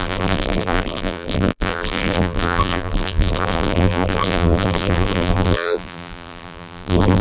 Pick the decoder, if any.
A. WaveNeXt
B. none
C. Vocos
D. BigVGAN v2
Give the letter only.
D